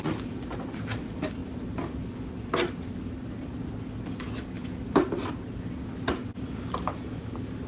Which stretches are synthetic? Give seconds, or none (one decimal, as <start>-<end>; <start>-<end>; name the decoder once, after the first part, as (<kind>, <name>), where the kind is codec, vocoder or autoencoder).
none